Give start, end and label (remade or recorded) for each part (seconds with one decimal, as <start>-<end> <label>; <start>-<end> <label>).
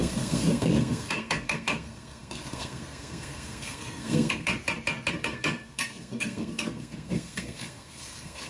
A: 0.0-4.5 remade; 4.5-5.1 recorded; 5.1-8.5 remade